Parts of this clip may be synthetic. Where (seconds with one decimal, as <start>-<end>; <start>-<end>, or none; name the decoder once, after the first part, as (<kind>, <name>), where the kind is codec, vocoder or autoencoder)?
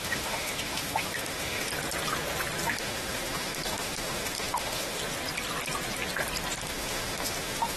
0.0-1.7 (autoencoder, DAC-VAE); 2.7-5.0; 6.6-7.8